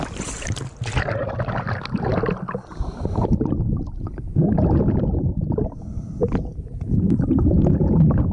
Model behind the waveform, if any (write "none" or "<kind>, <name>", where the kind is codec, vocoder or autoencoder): none